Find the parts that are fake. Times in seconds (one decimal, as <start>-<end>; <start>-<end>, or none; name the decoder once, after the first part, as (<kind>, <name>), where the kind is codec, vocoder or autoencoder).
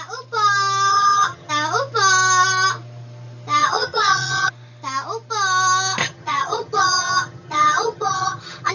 0.9-1.5 (vocoder, HiFi-GAN); 3.6-4.5; 6.0-8.7